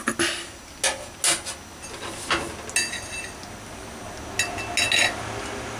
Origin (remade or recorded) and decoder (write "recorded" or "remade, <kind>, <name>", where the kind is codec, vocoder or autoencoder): recorded